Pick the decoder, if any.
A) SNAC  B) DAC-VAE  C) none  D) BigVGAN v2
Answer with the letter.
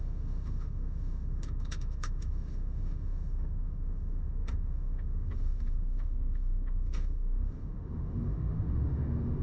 B